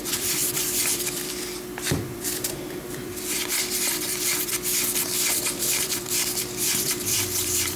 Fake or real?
fake